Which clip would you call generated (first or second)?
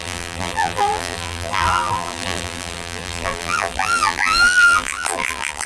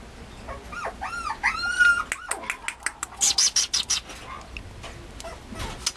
first